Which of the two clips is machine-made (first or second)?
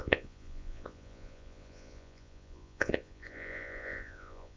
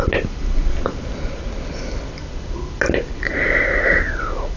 first